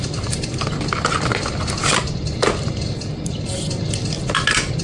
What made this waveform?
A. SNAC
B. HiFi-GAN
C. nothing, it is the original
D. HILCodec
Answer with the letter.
C